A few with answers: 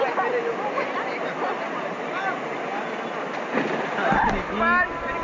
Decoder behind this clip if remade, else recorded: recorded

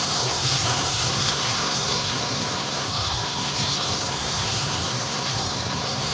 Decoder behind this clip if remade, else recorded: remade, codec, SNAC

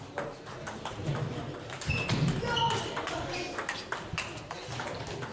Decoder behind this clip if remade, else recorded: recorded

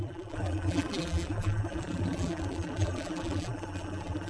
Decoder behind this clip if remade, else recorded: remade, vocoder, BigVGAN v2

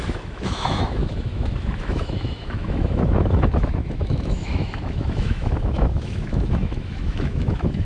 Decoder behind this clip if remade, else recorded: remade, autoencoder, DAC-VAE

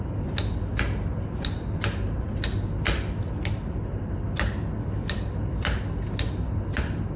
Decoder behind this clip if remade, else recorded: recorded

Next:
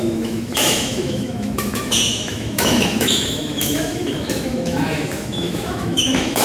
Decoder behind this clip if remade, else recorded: remade, autoencoder, DAC-VAE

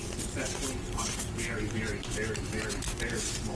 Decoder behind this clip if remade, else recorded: recorded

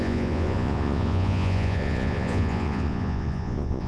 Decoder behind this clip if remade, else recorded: remade, vocoder, Vocos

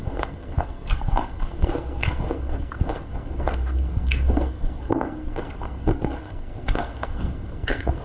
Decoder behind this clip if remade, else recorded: remade, codec, SNAC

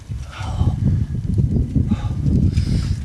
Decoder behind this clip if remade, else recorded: recorded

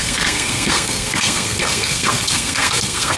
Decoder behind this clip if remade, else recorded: remade, codec, SNAC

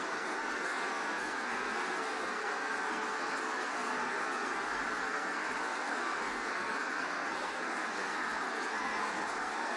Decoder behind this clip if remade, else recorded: remade, codec, SNAC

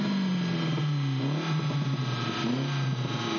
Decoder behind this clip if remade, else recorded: recorded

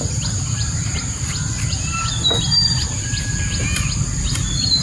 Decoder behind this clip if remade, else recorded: recorded